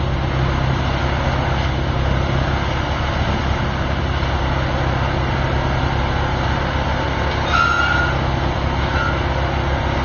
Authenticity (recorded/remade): recorded